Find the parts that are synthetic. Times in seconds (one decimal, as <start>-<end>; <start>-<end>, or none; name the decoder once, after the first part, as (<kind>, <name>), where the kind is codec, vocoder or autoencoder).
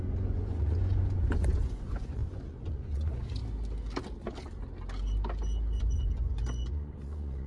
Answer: 0.0-3.4 (vocoder, Vocos); 5.8-7.5